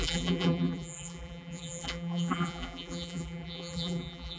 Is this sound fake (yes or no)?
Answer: yes